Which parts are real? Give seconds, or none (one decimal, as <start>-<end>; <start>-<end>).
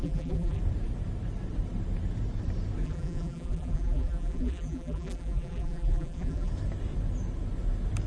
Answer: 0.6-2.8; 6.5-8.1